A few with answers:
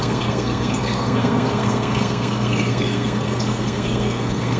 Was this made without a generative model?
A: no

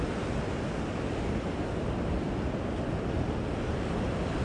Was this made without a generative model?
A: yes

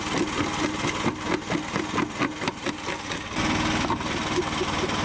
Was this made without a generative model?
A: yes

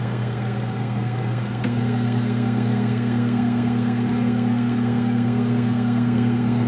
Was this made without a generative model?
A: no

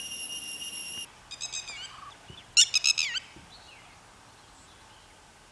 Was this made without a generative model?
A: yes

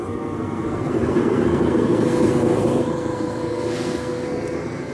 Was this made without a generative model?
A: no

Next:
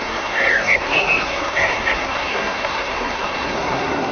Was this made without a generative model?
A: no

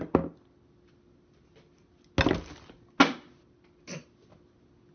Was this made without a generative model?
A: yes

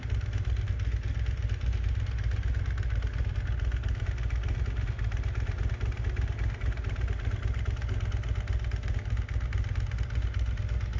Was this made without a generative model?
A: yes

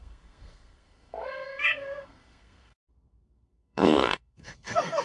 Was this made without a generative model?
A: no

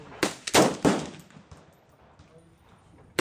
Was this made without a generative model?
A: yes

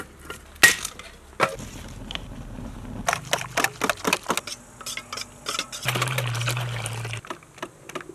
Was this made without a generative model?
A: yes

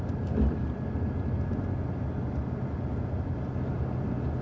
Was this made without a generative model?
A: yes